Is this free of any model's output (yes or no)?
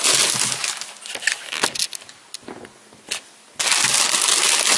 yes